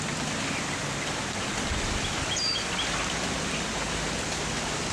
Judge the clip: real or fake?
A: real